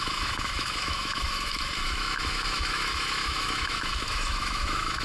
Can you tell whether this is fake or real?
fake